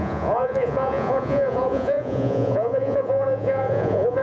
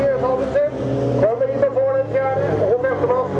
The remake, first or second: first